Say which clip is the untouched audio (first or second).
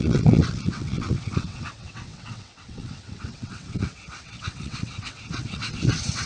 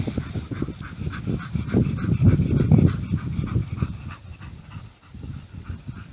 second